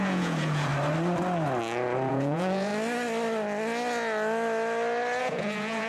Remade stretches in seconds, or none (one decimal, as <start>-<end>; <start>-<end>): 0.0-0.7; 2.1-2.7; 5.2-5.9